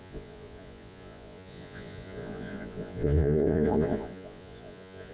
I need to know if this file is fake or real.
fake